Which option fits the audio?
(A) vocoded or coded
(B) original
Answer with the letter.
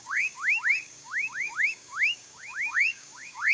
A